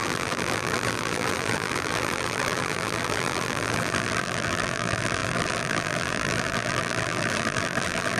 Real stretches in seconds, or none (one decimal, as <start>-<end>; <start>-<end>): none